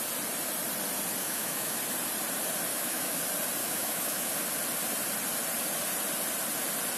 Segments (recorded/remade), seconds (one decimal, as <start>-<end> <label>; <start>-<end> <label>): 0.0-1.2 recorded; 1.2-1.8 remade; 1.8-2.7 recorded; 2.7-3.2 remade; 3.2-3.6 recorded; 3.6-4.3 remade; 4.3-7.0 recorded

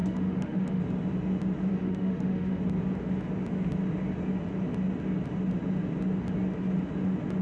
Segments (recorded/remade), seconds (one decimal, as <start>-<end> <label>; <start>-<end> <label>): 0.0-0.8 remade; 0.8-1.7 recorded; 1.7-2.6 remade; 2.6-7.4 recorded

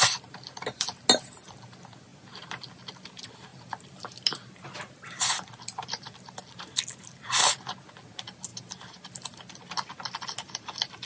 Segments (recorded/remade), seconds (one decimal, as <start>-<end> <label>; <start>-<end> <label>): 0.0-11.1 recorded

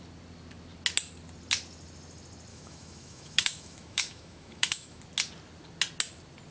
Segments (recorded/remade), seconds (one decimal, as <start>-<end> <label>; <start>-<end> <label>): 0.0-2.5 recorded; 2.5-5.0 remade; 5.0-6.5 recorded

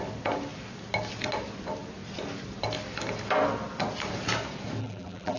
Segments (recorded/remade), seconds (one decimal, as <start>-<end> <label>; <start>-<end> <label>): 0.0-4.8 recorded; 4.8-5.4 remade